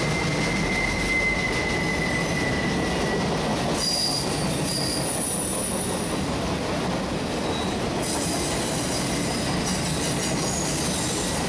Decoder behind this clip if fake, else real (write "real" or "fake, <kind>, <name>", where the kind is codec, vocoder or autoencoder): real